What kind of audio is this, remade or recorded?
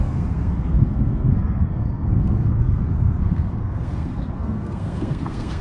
remade